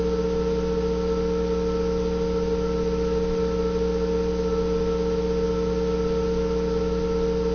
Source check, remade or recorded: recorded